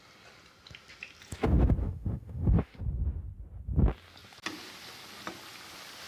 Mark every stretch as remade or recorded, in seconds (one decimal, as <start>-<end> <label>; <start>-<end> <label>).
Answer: 0.0-1.8 recorded; 1.8-2.8 remade; 2.8-6.1 recorded